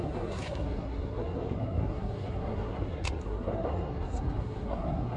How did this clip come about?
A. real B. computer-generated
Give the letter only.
B